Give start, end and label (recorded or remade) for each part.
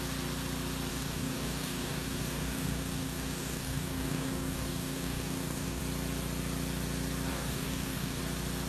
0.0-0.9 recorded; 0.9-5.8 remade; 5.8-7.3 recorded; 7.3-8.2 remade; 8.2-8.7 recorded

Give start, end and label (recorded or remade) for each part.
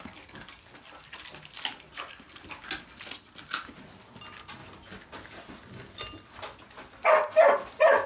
0.0-8.1 recorded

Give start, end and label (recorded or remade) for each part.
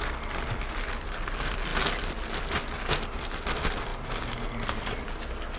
0.0-5.6 recorded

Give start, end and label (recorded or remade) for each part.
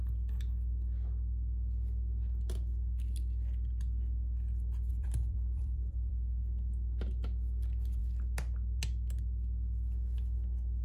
0.0-4.9 recorded; 4.9-6.1 remade; 6.1-10.8 recorded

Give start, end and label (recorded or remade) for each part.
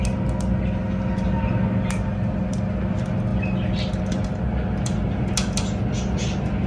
0.0-6.7 recorded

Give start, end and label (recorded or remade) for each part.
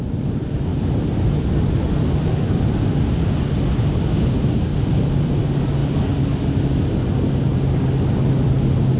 0.0-9.0 recorded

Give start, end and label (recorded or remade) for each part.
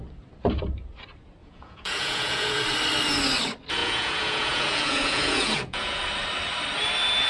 0.0-1.4 recorded; 1.4-2.6 remade; 2.6-3.8 recorded; 3.8-6.0 remade; 6.0-7.3 recorded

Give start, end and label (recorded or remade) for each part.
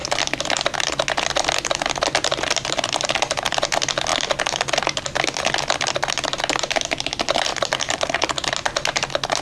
0.0-7.5 recorded; 7.5-8.2 remade; 8.2-9.4 recorded